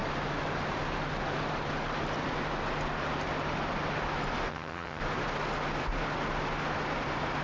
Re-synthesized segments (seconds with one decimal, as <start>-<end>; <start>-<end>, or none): 4.5-5.0